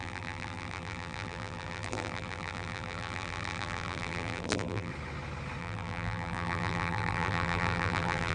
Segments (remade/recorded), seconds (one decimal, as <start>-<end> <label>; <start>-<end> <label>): 0.0-4.9 remade; 4.9-5.6 recorded; 5.6-8.3 remade

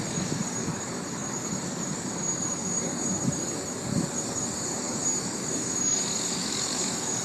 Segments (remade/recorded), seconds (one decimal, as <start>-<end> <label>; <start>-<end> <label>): 0.0-7.2 remade

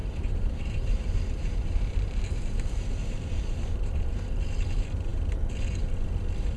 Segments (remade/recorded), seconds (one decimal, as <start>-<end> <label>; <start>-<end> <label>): 0.0-4.0 remade; 4.0-6.6 recorded